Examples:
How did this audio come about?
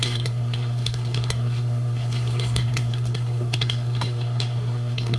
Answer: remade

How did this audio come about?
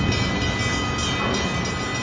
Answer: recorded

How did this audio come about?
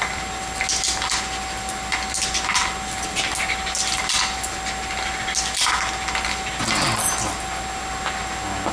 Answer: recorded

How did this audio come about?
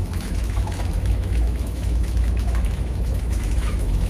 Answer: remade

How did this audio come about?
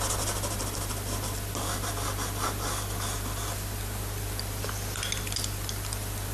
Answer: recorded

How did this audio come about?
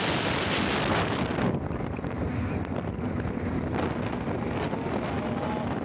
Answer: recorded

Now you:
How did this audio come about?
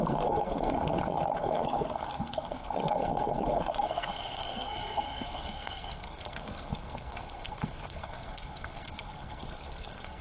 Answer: remade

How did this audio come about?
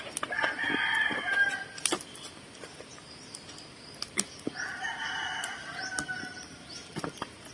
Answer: recorded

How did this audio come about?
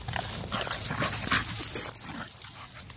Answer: recorded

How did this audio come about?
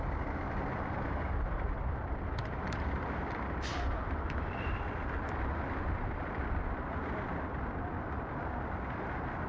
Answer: remade